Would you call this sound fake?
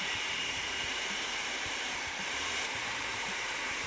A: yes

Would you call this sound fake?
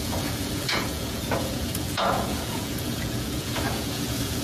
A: yes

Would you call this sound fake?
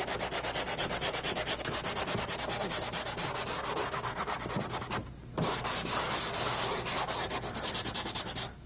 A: no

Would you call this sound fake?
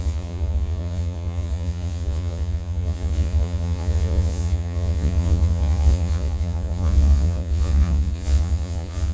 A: yes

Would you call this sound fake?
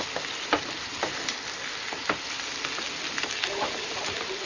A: no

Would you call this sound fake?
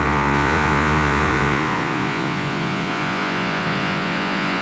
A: yes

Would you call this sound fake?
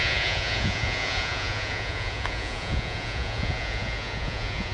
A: yes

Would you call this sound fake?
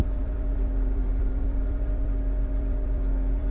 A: yes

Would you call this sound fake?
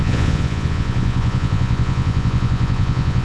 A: yes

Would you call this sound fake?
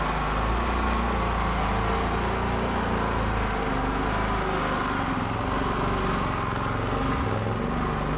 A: no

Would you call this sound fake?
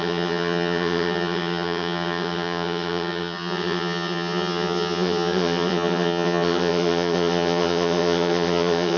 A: yes